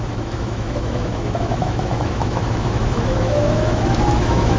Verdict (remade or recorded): remade